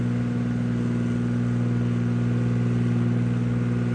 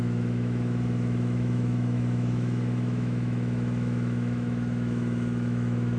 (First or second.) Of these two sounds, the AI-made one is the second